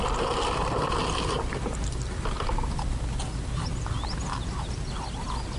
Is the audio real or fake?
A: real